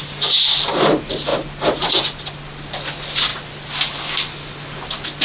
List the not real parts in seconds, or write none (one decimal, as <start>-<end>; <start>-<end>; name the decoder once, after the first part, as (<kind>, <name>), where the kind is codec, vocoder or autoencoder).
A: none